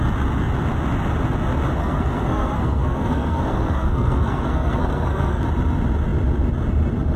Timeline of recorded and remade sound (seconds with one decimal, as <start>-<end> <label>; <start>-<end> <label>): 0.0-1.8 recorded; 1.8-5.4 remade; 5.4-7.2 recorded